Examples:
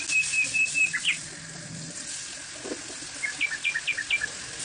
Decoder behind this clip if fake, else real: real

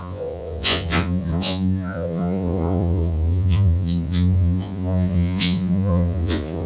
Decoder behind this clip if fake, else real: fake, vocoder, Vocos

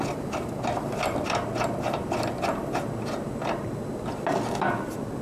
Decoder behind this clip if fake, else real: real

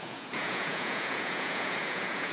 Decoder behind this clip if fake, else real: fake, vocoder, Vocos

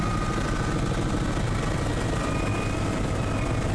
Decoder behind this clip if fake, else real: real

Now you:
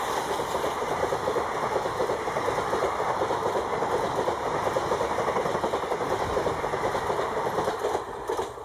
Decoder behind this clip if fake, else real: real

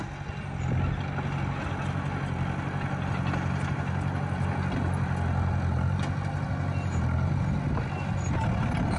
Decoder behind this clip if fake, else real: real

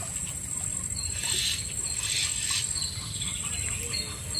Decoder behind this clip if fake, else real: real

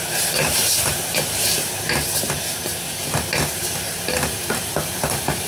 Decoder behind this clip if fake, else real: fake, vocoder, BigVGAN v2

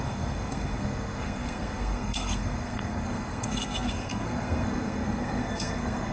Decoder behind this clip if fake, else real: fake, codec, SNAC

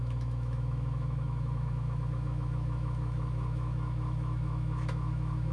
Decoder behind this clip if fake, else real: fake, autoencoder, DAC-VAE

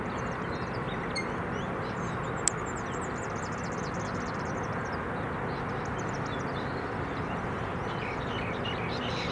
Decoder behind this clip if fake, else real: real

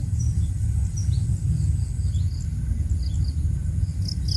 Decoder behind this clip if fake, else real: real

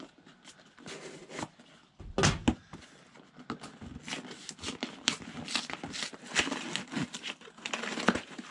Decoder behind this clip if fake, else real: real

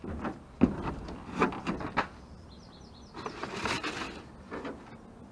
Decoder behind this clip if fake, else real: real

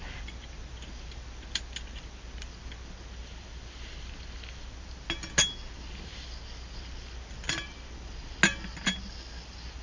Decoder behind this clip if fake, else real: real